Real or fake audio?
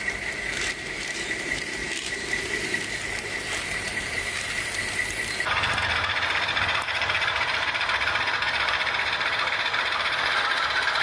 fake